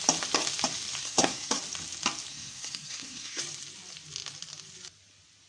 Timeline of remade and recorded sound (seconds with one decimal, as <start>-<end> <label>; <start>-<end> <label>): 0.0-1.0 recorded; 1.0-1.6 remade; 1.6-2.3 recorded; 2.3-3.4 remade; 3.4-5.5 recorded